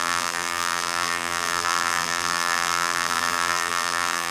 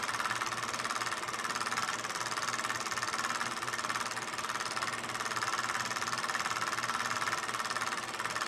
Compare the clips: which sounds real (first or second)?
second